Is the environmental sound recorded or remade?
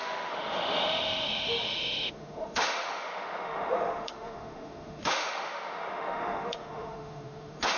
remade